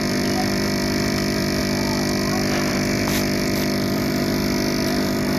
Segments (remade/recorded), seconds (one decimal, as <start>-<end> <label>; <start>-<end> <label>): 0.0-1.6 remade; 1.6-2.7 recorded; 2.7-4.4 remade; 4.4-5.0 recorded; 5.0-5.4 remade